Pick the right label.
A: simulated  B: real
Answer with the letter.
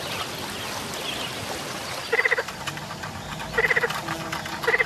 B